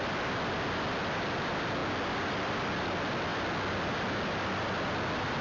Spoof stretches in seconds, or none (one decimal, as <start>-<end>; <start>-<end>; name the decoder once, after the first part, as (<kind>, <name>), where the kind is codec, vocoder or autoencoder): none